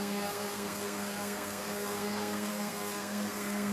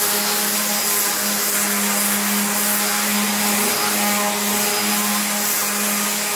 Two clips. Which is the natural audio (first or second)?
second